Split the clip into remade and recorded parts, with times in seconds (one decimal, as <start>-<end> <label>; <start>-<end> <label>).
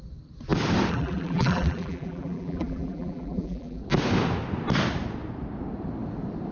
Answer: 0.0-0.9 recorded; 0.9-3.8 remade; 3.8-6.5 recorded